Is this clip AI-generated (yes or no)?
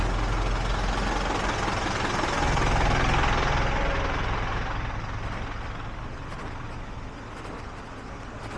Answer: no